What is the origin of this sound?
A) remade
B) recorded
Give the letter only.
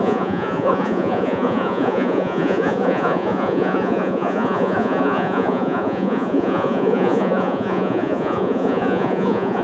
A